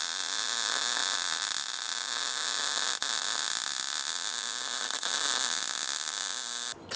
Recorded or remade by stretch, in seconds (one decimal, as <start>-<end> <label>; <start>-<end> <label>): 0.0-7.0 recorded